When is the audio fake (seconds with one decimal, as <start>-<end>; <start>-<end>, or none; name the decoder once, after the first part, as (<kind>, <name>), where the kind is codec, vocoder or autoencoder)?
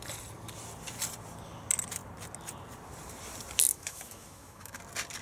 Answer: 3.7-4.8 (autoencoder, DAC-VAE)